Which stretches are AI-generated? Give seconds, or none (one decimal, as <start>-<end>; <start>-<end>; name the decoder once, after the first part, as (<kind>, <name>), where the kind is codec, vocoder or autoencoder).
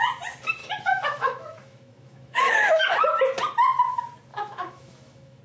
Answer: 0.6-3.1 (autoencoder, DAC-VAE); 4.3-5.4